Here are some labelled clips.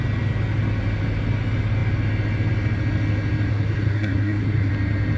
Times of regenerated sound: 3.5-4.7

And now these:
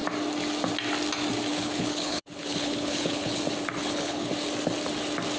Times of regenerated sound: 1.5-3.4; 3.8-4.3

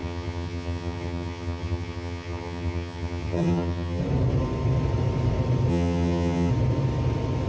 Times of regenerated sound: 0.0-4.0; 5.7-6.5